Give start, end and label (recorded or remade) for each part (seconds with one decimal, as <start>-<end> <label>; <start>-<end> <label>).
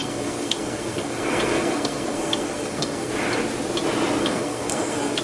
0.0-3.1 remade; 3.1-4.2 recorded; 4.2-5.2 remade